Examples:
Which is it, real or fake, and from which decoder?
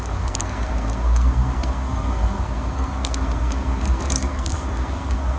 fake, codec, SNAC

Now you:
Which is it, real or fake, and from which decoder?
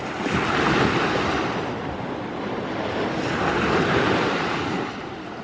real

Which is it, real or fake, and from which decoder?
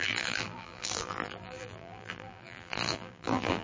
fake, vocoder, BigVGAN v2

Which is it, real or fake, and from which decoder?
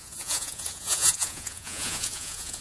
fake, vocoder, Vocos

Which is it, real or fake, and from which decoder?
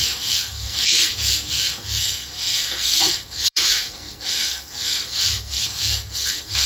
fake, codec, SNAC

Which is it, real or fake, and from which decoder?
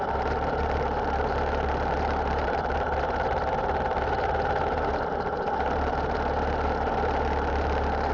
fake, vocoder, BigVGAN v2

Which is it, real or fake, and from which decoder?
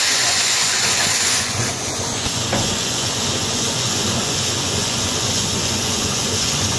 fake, vocoder, Vocos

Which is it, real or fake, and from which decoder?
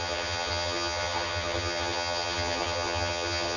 fake, vocoder, HiFi-GAN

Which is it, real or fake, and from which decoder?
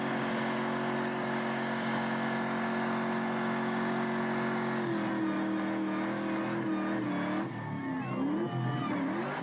real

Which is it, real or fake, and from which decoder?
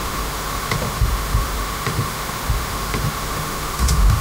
fake, autoencoder, DAC-VAE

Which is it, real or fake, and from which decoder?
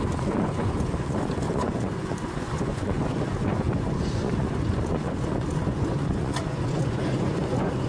fake, vocoder, Vocos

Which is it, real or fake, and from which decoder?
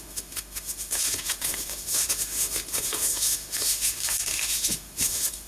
fake, autoencoder, DAC-VAE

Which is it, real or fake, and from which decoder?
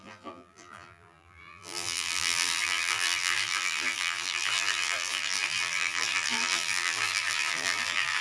fake, vocoder, BigVGAN v2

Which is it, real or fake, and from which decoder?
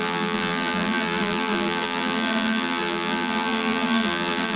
fake, vocoder, BigVGAN v2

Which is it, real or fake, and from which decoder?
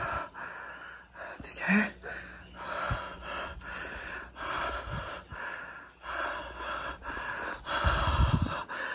real